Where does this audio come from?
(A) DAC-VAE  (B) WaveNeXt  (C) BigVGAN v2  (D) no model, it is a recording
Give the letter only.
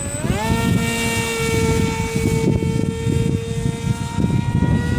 D